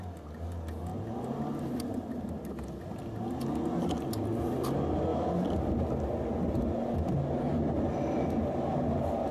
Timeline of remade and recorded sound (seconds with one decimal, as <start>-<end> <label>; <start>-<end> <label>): 0.0-9.3 recorded